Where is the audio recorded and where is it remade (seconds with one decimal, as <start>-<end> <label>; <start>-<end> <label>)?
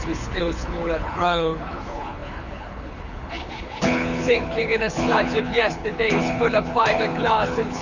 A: 0.0-7.8 remade